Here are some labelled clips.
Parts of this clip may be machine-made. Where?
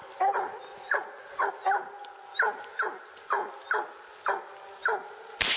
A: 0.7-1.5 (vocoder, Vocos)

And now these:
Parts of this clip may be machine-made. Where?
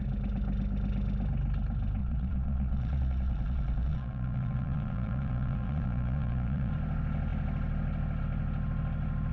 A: 2.0-6.7 (vocoder, Vocos)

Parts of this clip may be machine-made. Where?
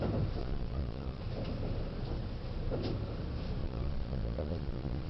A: 0.4-1.2 (vocoder, Vocos); 3.6-5.1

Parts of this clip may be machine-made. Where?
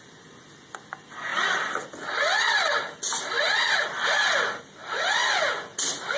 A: none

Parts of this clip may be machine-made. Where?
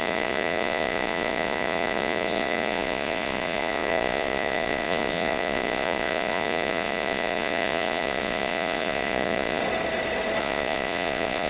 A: 0.0-9.6 (vocoder, Vocos); 10.4-11.5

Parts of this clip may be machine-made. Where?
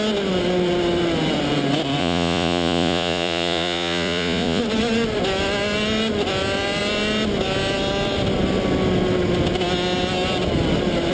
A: 2.0-4.6 (vocoder, Vocos)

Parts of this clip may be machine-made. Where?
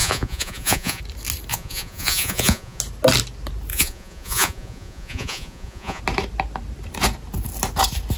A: 0.0-1.0 (vocoder, Vocos); 1.5-2.8; 3.7-6.0